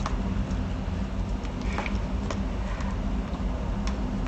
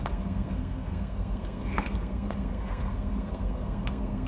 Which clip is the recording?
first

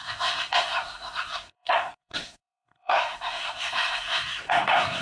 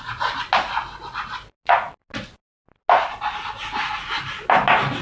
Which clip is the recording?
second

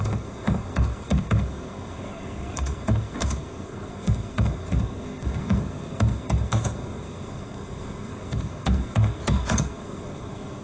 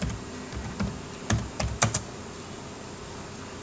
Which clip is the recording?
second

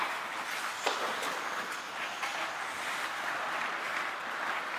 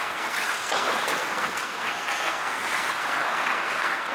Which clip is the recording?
first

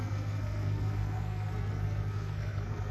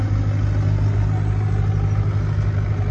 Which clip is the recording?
second